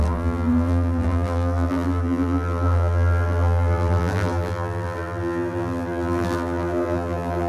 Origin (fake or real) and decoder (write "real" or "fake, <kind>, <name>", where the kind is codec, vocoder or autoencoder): fake, vocoder, BigVGAN v2